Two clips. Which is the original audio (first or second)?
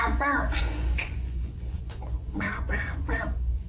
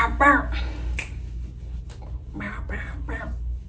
second